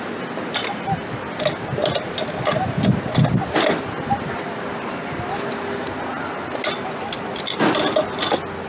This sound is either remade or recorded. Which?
recorded